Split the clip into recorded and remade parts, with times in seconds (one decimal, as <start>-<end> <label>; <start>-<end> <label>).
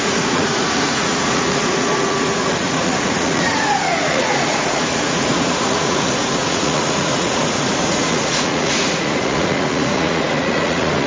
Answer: 0.0-11.1 remade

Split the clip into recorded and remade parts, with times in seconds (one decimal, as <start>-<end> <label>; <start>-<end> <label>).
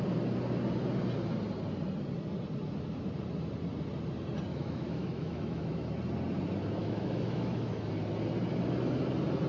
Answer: 0.0-4.5 recorded; 4.5-5.9 remade; 5.9-6.8 recorded; 6.8-7.9 remade; 7.9-9.5 recorded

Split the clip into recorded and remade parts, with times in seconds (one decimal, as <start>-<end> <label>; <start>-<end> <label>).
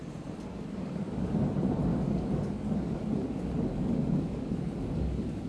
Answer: 0.0-0.5 recorded; 0.5-1.4 remade; 1.4-1.9 recorded; 1.9-5.5 remade